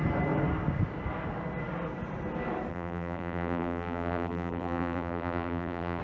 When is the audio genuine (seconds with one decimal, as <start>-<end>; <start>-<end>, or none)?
0.0-2.7